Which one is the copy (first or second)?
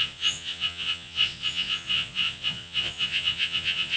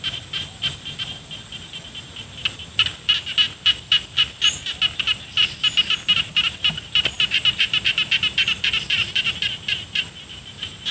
first